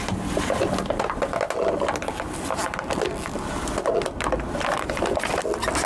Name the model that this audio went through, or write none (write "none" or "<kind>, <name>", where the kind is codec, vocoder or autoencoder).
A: none